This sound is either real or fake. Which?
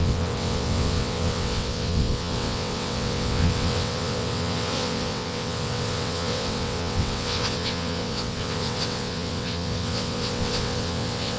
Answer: fake